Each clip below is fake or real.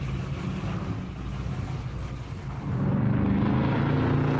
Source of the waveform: real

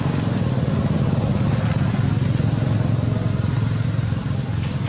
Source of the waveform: real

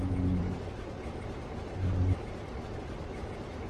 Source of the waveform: fake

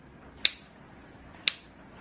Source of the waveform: real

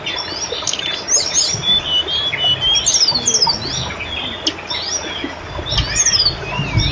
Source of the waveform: real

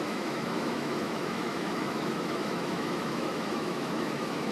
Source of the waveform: fake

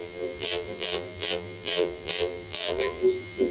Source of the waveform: fake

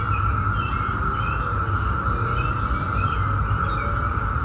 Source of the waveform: real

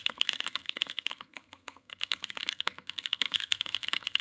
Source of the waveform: fake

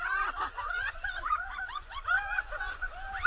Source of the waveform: fake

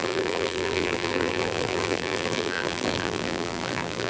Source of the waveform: fake